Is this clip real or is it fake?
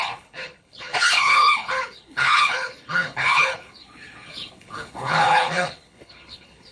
fake